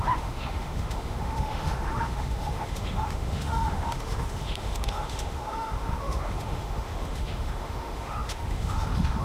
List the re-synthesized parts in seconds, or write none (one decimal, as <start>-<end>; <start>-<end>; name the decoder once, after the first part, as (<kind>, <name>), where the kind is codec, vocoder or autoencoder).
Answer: 0.0-9.2 (autoencoder, DAC-VAE)

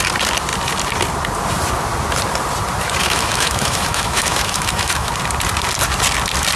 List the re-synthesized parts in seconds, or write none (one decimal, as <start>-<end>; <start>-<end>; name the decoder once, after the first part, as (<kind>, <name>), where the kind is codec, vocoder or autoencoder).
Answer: 3.0-5.1 (autoencoder, DAC-VAE)

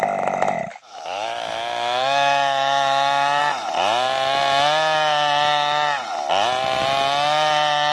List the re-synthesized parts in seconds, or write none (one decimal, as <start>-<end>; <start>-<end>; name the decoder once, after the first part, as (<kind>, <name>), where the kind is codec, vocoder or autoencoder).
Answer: 0.7-3.4 (autoencoder, DAC-VAE)

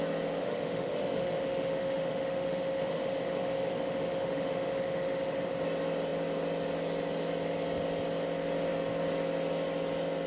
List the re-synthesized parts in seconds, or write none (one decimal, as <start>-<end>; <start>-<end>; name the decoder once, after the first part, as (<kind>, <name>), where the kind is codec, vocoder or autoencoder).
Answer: 0.4-5.6 (autoencoder, DAC-VAE)

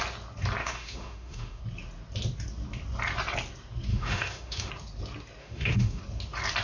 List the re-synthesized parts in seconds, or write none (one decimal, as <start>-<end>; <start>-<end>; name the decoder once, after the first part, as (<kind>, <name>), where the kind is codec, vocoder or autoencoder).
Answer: 0.6-1.6 (autoencoder, DAC-VAE); 3.9-4.7; 5.4-6.0

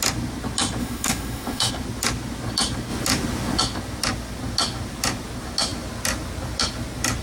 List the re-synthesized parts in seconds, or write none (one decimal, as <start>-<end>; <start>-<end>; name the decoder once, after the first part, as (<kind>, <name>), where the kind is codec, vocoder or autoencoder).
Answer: 0.8-1.7 (autoencoder, DAC-VAE)